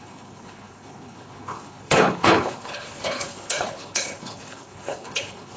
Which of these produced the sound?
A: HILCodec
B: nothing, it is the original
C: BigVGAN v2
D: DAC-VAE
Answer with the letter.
A